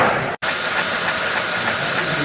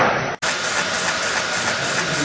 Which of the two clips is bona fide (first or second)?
second